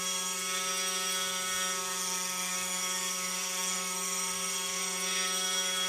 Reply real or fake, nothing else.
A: fake